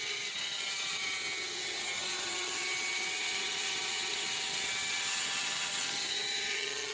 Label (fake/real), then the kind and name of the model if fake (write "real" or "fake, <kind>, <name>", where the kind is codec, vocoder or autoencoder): fake, vocoder, HiFi-GAN